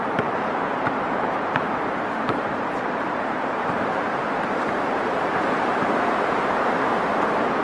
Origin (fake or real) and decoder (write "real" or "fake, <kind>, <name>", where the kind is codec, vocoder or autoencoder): fake, vocoder, BigVGAN v2